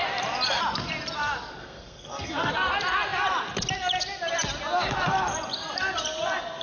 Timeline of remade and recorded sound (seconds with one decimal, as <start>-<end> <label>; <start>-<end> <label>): 0.0-1.6 recorded; 1.6-2.5 remade; 2.5-6.6 recorded